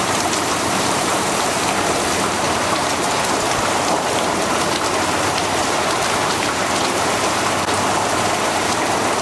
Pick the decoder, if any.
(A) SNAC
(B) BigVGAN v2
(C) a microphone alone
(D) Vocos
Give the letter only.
B